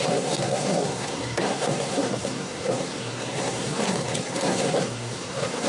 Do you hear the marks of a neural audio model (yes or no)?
yes